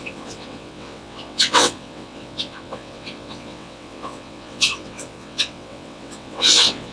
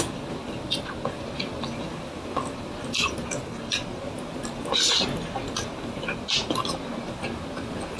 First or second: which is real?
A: second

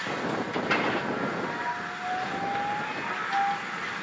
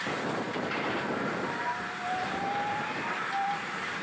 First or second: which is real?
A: first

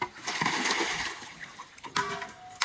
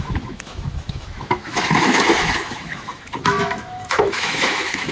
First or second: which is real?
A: first